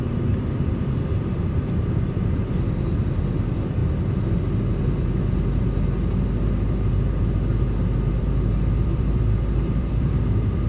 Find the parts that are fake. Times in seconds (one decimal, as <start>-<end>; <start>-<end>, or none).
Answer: 0.0-3.8; 8.1-10.7